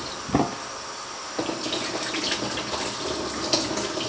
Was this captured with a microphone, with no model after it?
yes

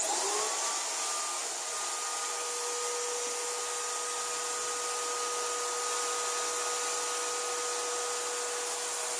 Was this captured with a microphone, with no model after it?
yes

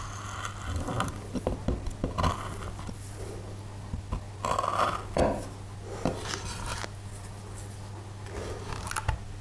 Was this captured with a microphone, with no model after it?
yes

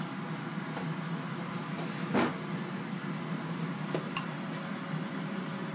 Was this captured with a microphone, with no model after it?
yes